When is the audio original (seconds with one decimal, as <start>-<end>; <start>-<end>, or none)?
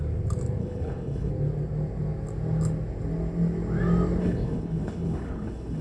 0.0-0.6; 1.3-4.2